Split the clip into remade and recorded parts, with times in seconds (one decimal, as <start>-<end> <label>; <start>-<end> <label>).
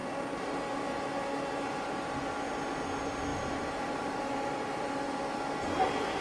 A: 0.0-3.3 recorded; 3.3-5.0 remade; 5.0-6.2 recorded